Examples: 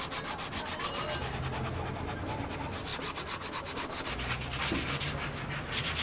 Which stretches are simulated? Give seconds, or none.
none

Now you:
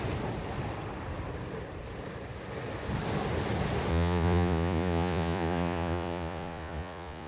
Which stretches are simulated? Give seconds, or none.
3.9-7.3 (vocoder, Vocos)